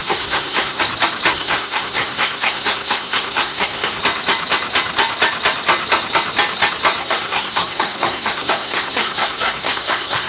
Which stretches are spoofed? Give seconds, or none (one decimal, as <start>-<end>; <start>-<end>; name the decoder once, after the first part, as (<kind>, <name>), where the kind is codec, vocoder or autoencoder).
0.0-0.8 (codec, SNAC); 1.3-4.0; 7.0-10.3